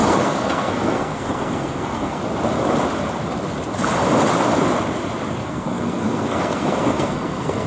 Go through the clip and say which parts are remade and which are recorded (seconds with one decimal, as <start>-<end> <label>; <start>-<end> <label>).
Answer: 0.0-2.2 remade; 2.2-5.4 recorded; 5.4-7.7 remade

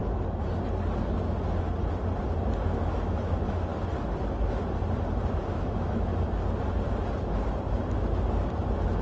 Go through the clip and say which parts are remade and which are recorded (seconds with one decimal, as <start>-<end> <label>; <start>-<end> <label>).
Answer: 0.0-2.9 recorded; 2.9-3.7 remade; 3.7-5.5 recorded; 5.5-6.1 remade; 6.1-9.0 recorded

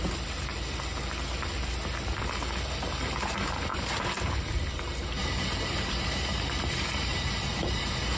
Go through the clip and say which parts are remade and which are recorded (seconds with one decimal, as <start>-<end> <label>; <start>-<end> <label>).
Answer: 0.0-0.5 remade; 0.5-2.6 recorded; 2.6-8.2 remade

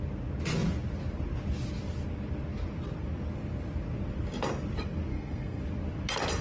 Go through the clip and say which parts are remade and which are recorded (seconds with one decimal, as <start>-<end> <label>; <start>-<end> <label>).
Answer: 0.0-5.1 recorded; 5.1-5.6 remade; 5.6-6.4 recorded

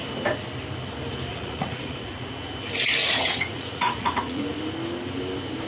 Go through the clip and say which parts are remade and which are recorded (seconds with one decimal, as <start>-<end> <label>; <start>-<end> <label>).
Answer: 0.0-1.3 recorded; 1.3-2.5 remade; 2.5-3.0 recorded; 3.0-4.4 remade; 4.4-5.7 recorded

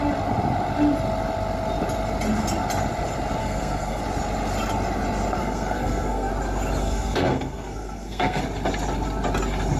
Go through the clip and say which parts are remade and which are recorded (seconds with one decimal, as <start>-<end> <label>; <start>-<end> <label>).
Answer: 0.0-3.4 recorded; 3.4-4.0 remade; 4.0-5.4 recorded; 5.4-6.3 remade; 6.3-6.8 recorded; 6.8-8.4 remade; 8.4-9.8 recorded

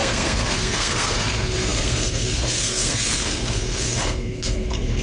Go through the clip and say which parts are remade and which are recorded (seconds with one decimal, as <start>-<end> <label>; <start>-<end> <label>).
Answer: 0.0-5.0 remade